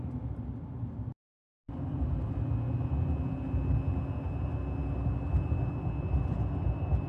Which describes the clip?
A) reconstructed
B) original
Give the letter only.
B